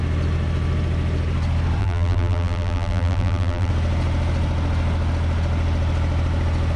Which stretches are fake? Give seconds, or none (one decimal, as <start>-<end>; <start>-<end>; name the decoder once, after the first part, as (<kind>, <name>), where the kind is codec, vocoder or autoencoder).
1.8-3.7 (vocoder, BigVGAN v2)